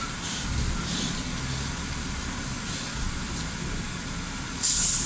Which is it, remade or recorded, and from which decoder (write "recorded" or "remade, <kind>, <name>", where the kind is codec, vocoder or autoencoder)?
recorded